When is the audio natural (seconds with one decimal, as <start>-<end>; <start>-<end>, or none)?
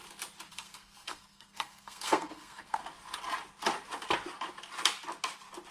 0.0-0.5; 2.8-5.7